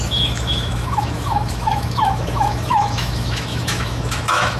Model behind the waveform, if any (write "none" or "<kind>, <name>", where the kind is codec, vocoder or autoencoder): autoencoder, DAC-VAE